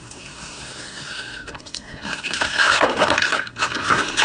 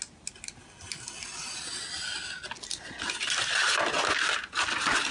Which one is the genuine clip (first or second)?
second